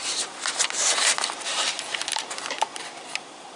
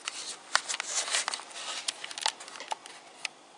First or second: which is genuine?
second